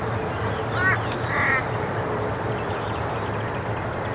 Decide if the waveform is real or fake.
real